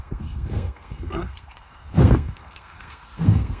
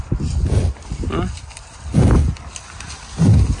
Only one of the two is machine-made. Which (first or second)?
first